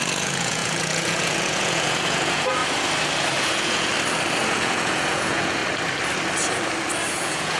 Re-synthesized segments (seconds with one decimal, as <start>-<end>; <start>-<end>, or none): 0.0-2.6; 3.4-3.9; 4.4-5.6; 7.1-7.6